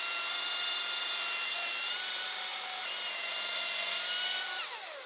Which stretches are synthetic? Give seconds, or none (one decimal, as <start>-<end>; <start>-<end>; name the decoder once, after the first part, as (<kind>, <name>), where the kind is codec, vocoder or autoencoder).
none